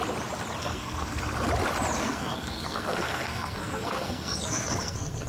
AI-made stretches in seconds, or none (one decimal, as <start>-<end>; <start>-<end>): 0.6-1.2; 2.0-5.3